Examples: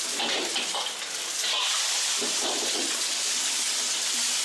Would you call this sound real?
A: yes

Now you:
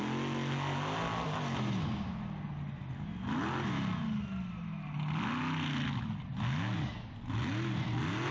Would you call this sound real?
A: yes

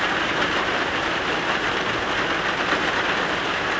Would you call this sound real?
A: yes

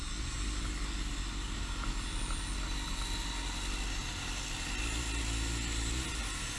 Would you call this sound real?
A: yes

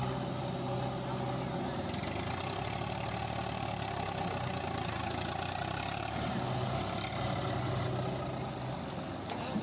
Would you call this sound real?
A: yes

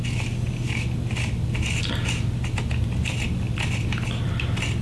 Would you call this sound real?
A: yes